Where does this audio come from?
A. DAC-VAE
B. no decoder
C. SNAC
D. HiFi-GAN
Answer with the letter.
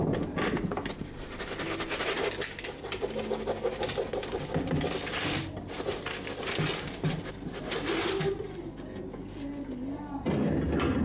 B